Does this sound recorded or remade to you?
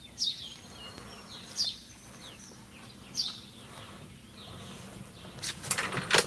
recorded